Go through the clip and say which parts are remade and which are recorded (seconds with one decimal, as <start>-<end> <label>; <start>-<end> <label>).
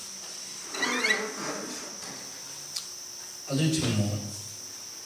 0.0-5.1 recorded